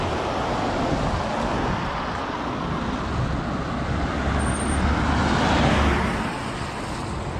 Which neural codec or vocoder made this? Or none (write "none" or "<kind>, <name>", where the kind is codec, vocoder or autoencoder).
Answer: none